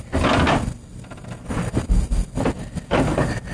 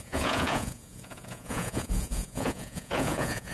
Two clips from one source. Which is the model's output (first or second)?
second